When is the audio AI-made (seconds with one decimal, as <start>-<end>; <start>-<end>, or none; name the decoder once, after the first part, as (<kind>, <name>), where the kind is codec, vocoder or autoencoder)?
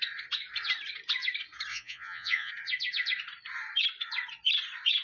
1.7-2.5 (vocoder, Vocos)